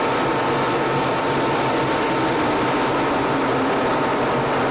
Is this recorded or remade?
recorded